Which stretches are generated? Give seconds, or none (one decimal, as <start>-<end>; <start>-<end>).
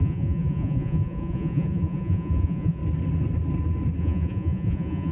0.0-2.8; 4.0-5.1